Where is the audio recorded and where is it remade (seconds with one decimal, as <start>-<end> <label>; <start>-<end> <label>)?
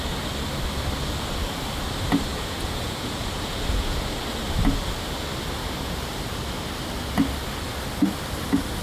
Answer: 0.0-2.3 recorded; 2.3-4.2 remade; 4.2-8.8 recorded